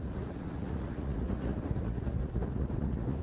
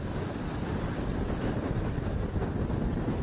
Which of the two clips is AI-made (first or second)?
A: first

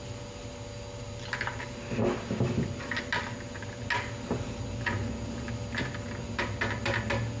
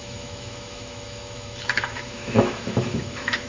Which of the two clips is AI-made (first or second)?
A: second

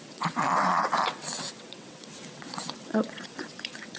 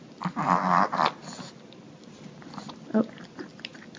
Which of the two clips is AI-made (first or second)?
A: first